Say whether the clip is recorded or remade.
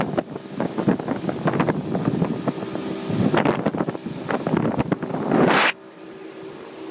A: recorded